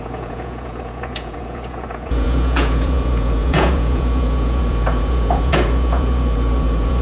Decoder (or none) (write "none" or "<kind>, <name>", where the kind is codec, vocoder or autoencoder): vocoder, Vocos